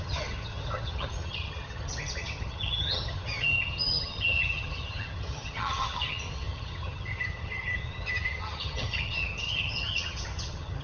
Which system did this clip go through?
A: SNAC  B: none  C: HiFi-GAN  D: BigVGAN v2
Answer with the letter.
C